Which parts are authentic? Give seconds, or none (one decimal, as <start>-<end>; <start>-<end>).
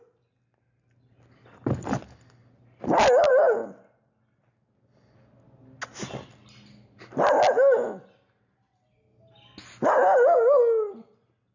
0.0-11.5